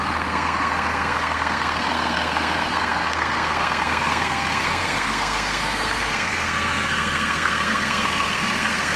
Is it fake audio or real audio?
fake